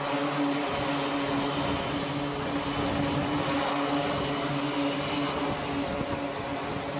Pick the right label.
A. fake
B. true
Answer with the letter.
B